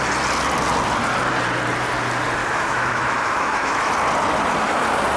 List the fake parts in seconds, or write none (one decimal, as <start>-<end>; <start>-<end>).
2.4-3.9